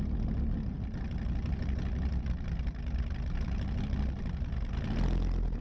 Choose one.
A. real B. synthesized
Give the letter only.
A